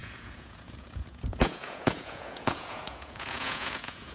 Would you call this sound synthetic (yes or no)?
yes